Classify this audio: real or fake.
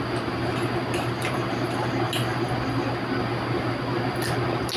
real